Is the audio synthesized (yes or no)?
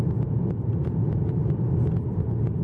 no